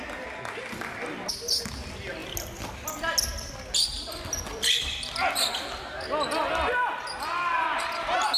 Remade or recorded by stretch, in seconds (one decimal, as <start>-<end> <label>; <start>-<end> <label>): 0.0-8.4 recorded